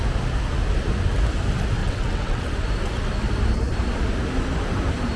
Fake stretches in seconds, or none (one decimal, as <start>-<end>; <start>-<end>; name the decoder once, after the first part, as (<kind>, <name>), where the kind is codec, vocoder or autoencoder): 1.8-2.5 (vocoder, WaveNeXt)